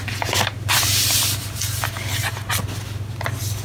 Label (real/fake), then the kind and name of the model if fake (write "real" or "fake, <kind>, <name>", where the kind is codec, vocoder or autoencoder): real